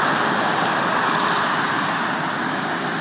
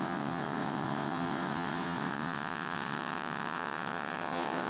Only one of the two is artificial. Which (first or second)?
second